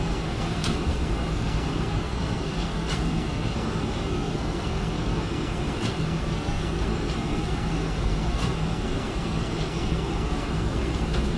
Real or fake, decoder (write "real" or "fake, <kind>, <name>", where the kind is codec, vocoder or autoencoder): fake, codec, SNAC